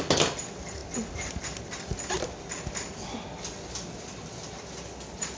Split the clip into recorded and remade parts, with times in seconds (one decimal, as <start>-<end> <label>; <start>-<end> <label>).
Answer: 0.0-5.4 recorded